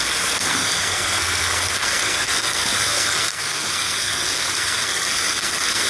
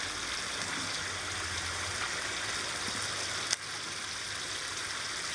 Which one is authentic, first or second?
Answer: second